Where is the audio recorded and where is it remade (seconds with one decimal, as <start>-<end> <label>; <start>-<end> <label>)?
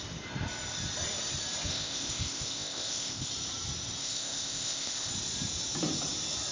0.0-1.7 recorded; 1.7-3.3 remade; 3.3-4.0 recorded; 4.0-5.1 remade; 5.1-6.5 recorded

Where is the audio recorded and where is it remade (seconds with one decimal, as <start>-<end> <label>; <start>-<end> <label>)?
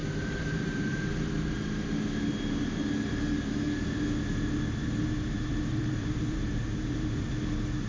0.0-1.1 remade; 1.1-4.8 recorded; 4.8-7.3 remade; 7.3-7.9 recorded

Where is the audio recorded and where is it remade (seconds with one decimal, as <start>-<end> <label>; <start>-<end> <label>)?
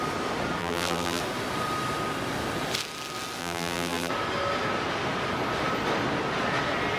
0.0-0.6 recorded; 0.6-1.2 remade; 1.2-3.4 recorded; 3.4-4.1 remade; 4.1-7.0 recorded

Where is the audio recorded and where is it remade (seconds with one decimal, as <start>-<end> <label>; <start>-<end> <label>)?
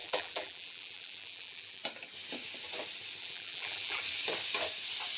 0.0-1.8 remade; 1.8-3.2 recorded; 3.2-4.0 remade; 4.0-5.2 recorded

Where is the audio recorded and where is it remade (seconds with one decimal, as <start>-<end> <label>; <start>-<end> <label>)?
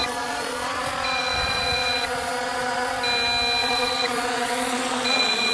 0.0-3.0 remade; 3.0-3.6 recorded; 3.6-5.5 remade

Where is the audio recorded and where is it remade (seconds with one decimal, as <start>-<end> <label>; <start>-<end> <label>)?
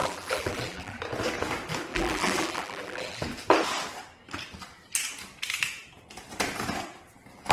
0.0-1.0 remade; 1.0-1.9 recorded; 1.9-3.2 remade; 3.2-7.5 recorded